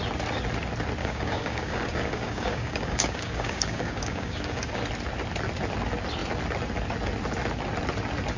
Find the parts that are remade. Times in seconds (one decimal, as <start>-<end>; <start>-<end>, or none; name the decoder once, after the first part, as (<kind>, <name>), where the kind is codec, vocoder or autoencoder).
1.0-4.8 (codec, DAC)

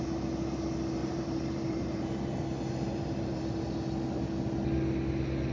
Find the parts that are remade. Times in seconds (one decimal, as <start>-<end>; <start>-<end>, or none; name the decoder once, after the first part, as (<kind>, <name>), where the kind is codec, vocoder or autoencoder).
1.0-3.4 (vocoder, BigVGAN v2)

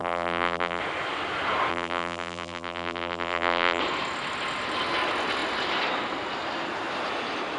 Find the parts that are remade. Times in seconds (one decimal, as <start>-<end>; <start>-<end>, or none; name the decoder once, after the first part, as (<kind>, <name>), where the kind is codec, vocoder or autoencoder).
0.0-0.8 (vocoder, BigVGAN v2); 1.7-3.8

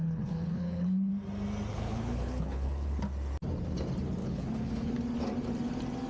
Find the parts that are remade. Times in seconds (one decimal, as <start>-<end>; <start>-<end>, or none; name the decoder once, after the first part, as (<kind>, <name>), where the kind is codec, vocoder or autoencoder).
0.0-1.1 (codec, HILCodec); 1.7-3.0; 4.2-4.9